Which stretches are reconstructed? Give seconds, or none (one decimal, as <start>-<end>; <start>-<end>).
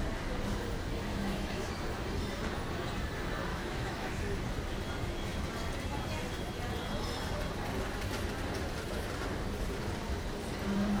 1.1-1.7; 3.5-4.1